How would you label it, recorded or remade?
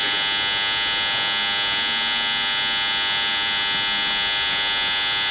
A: recorded